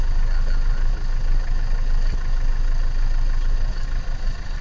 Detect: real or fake real